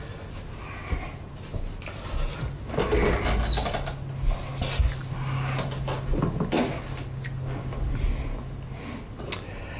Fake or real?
real